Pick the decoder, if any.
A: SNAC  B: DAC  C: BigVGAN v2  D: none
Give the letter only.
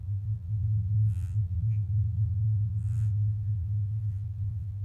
C